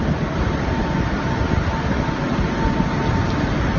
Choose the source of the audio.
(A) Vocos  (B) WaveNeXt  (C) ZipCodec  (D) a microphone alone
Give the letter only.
D